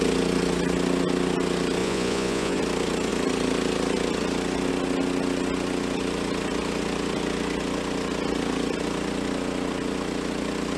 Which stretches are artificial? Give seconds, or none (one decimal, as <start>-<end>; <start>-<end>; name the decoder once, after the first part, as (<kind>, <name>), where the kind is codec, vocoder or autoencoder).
1.8-2.6 (vocoder, Vocos)